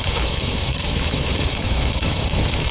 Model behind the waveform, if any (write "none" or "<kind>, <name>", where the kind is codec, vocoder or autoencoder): autoencoder, DAC-VAE